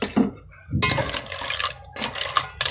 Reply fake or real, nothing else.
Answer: real